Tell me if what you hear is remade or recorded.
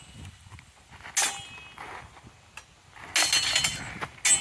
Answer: recorded